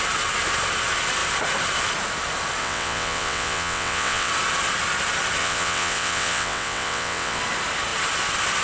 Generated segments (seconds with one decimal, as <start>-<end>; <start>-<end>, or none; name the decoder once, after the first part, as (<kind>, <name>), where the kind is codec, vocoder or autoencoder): 2.6-4.3 (vocoder, WaveNeXt); 5.4-7.4